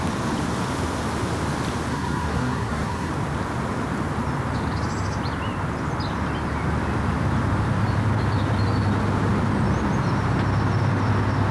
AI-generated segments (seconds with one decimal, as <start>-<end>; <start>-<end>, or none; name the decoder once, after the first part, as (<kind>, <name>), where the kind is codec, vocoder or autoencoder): 1.9-3.1 (codec, SNAC)